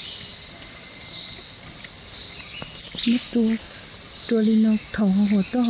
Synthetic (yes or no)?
no